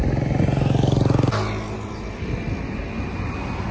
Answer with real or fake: real